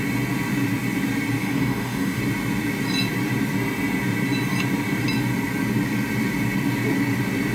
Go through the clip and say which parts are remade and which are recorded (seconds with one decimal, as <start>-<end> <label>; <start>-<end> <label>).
0.0-1.4 recorded; 1.4-2.2 remade; 2.2-7.5 recorded